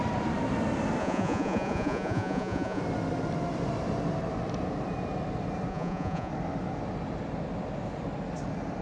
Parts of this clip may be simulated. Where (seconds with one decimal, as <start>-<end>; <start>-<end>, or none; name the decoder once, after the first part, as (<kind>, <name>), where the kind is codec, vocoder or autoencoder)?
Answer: 1.0-2.8 (vocoder, Vocos); 5.7-6.3